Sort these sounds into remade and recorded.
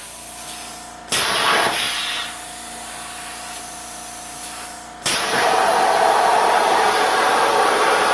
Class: recorded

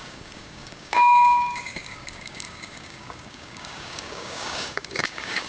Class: remade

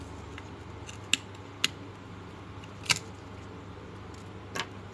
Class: recorded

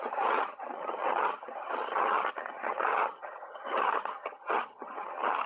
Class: remade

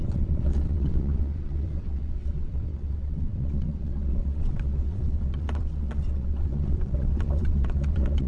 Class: remade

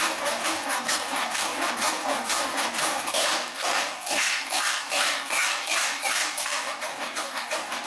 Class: remade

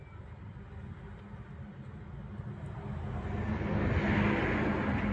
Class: recorded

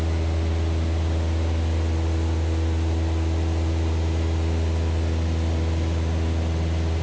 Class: recorded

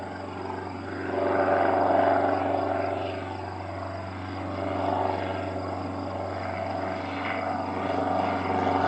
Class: recorded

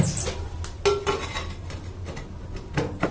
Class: recorded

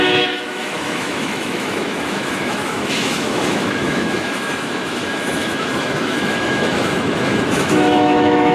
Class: remade